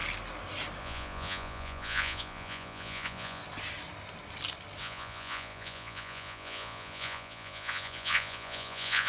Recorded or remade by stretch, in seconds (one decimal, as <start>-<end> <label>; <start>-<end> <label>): 0.0-0.8 recorded; 0.8-3.4 remade; 3.4-4.8 recorded; 4.8-9.1 remade